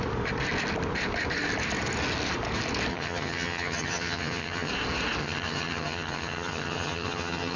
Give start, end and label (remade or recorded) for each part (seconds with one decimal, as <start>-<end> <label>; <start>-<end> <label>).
0.0-2.9 recorded; 2.9-4.7 remade; 4.7-5.2 recorded; 5.2-7.6 remade